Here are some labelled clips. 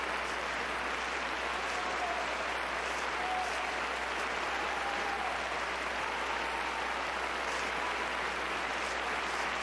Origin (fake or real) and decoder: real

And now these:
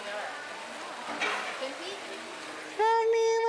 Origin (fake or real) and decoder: real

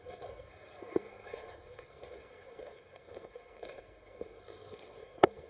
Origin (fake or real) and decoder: fake, codec, SNAC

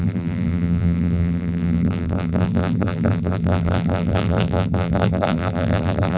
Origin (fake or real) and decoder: fake, vocoder, BigVGAN v2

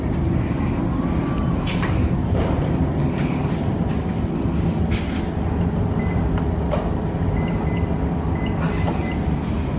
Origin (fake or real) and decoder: real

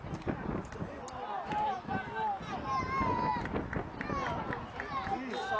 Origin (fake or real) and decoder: real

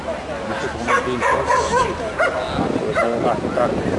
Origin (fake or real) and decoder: real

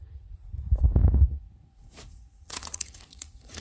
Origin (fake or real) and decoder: fake, vocoder, Vocos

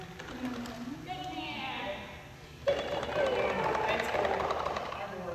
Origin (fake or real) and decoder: real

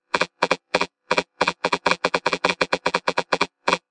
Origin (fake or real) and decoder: fake, vocoder, BigVGAN v2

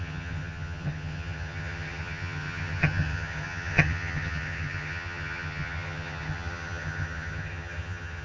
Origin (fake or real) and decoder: fake, vocoder, HiFi-GAN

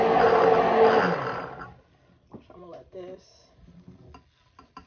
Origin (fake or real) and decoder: real